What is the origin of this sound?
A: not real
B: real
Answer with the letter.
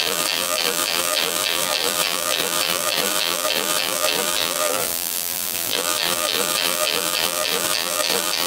A